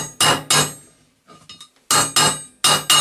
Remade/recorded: recorded